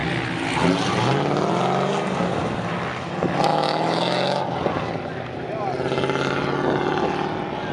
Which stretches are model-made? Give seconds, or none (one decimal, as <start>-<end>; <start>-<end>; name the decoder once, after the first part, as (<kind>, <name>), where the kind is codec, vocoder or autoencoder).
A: 3.5-4.4 (autoencoder, DAC-VAE)